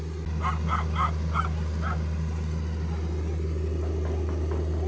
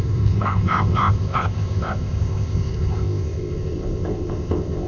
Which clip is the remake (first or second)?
second